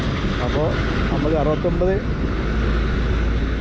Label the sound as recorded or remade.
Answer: recorded